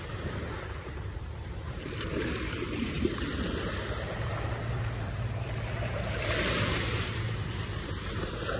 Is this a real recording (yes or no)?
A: no